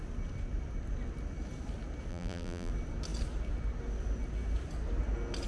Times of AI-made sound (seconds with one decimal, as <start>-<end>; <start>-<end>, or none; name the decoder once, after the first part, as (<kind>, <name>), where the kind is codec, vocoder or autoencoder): 2.1-2.7 (vocoder, BigVGAN v2)